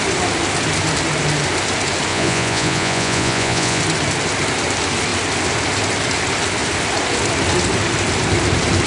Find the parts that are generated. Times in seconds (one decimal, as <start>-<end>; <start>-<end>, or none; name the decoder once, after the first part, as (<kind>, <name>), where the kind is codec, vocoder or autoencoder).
2.1-3.8 (vocoder, Vocos)